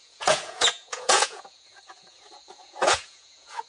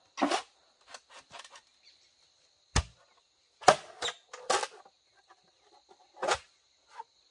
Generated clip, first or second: first